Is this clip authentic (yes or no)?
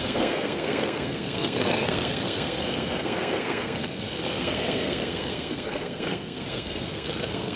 no